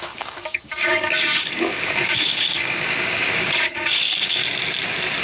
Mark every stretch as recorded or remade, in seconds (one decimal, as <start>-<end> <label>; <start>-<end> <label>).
0.0-4.4 remade; 4.4-5.2 recorded